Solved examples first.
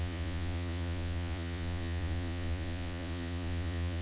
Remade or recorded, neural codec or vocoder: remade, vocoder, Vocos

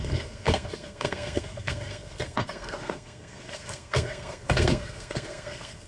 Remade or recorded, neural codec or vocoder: remade, codec, SNAC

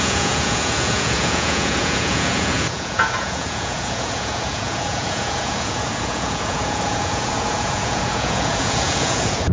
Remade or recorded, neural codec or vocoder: remade, vocoder, Vocos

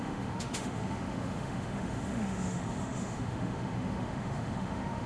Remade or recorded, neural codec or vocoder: remade, autoencoder, DAC-VAE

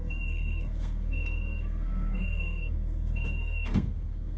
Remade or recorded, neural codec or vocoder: remade, codec, SNAC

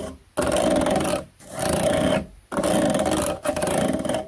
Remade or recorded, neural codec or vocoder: recorded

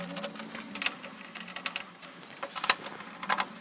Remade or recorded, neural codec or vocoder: recorded